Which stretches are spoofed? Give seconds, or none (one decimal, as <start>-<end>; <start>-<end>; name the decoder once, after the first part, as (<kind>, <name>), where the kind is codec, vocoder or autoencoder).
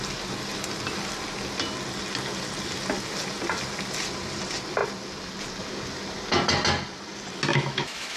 7.5-8.2 (autoencoder, DAC-VAE)